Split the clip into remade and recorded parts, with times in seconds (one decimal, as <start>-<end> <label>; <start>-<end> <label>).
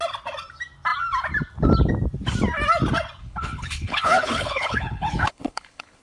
0.0-3.2 recorded; 3.2-6.0 remade